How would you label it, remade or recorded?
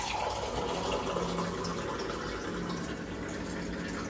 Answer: recorded